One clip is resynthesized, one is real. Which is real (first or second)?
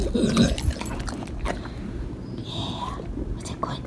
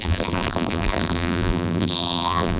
first